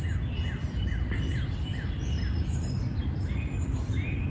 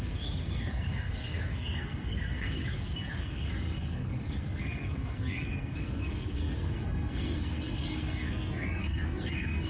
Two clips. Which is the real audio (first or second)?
first